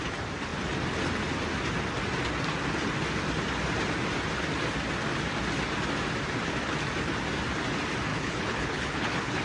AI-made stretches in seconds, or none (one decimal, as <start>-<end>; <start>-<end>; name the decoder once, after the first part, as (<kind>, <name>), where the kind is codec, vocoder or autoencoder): 8.1-9.4 (codec, HILCodec)